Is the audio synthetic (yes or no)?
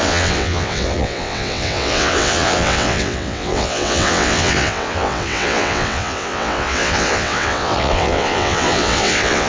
yes